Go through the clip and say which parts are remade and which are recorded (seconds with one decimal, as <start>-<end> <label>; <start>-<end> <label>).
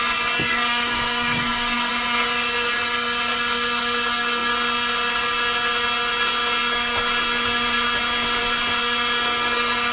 0.0-0.5 recorded; 0.5-1.9 remade; 1.9-9.9 recorded